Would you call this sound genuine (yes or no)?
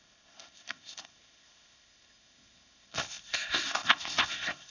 no